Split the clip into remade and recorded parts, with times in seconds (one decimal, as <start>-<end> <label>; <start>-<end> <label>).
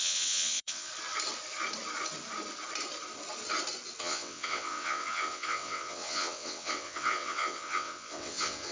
0.0-0.9 remade; 0.9-4.0 recorded; 4.0-8.7 remade